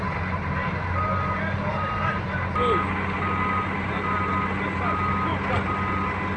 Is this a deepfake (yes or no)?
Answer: no